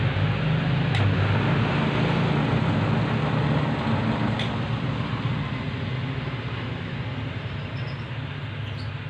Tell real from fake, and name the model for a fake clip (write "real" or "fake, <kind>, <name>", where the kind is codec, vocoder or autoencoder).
real